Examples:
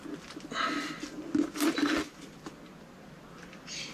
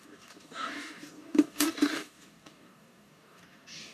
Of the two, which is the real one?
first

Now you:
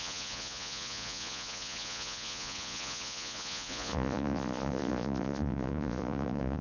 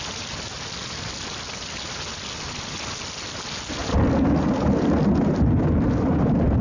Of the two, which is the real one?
second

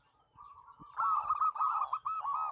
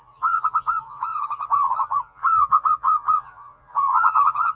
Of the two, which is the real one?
first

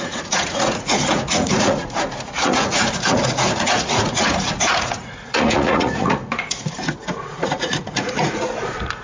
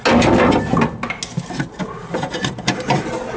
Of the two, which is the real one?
second